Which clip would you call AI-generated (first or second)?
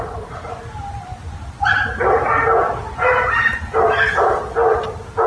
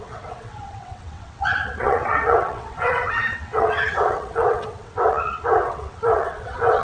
second